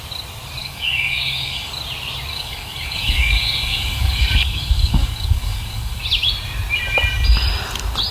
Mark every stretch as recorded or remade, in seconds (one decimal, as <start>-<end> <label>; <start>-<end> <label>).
0.0-0.6 recorded; 0.6-1.7 remade; 1.7-2.3 recorded; 2.3-6.0 remade; 6.0-8.1 recorded